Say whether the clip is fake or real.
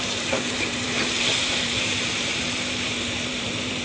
fake